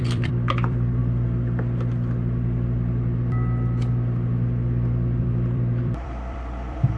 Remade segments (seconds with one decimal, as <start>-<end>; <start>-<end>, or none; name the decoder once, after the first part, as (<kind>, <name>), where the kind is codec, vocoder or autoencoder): 0.0-1.0 (vocoder, BigVGAN v2); 5.2-7.0